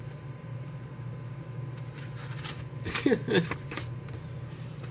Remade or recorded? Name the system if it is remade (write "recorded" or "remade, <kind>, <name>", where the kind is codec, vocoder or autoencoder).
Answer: recorded